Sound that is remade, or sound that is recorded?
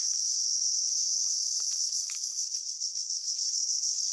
remade